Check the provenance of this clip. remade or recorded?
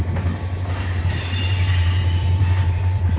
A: remade